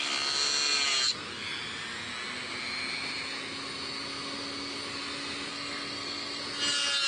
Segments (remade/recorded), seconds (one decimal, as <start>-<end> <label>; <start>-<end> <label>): 0.0-5.5 recorded; 5.5-6.4 remade; 6.4-7.1 recorded